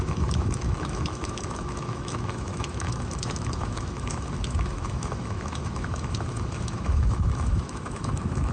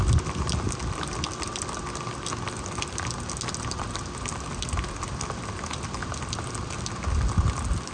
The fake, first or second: first